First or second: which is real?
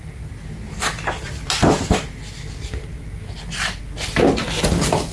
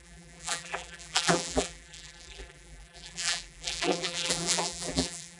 first